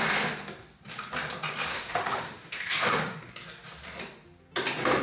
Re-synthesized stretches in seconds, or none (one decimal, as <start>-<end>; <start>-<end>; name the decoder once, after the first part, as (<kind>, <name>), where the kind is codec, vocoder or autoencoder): 1.7-3.3 (autoencoder, DAC-VAE)